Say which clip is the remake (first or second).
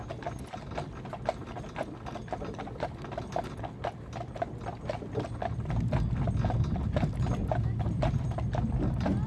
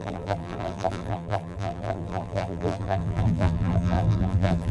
second